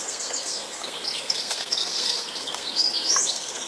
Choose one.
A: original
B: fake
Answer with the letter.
B